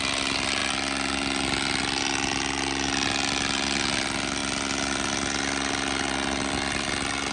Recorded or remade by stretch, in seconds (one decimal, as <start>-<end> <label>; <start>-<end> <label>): 0.0-7.3 recorded